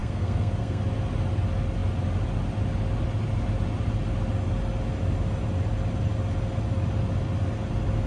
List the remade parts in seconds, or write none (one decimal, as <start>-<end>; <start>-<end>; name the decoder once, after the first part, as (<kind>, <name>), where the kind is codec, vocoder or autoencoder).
0.0-0.8 (codec, SNAC)